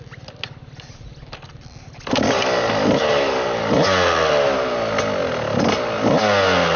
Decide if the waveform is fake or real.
real